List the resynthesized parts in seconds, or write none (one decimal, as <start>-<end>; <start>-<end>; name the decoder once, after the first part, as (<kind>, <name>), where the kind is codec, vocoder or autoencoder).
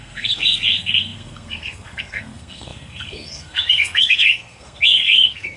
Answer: 0.0-5.6 (codec, SNAC)